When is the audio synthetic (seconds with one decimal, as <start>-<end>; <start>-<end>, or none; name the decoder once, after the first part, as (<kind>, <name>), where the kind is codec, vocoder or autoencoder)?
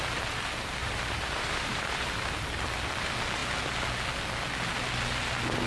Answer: 0.8-2.3 (vocoder, BigVGAN v2)